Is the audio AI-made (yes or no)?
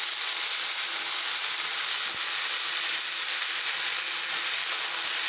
yes